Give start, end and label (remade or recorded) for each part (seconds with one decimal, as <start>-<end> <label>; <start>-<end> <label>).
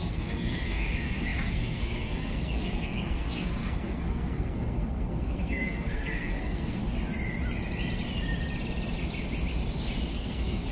0.0-6.8 remade; 6.8-10.1 recorded; 10.1-10.7 remade